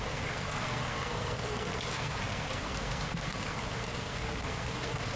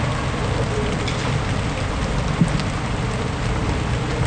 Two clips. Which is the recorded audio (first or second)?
second